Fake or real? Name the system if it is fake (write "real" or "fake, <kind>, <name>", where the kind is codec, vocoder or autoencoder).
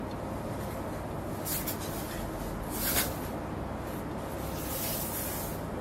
real